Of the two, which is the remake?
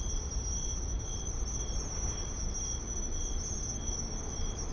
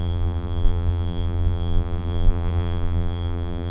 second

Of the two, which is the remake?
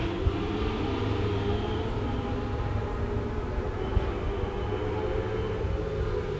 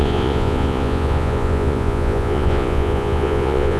second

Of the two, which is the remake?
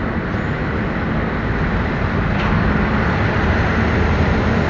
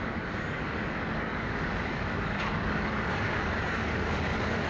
second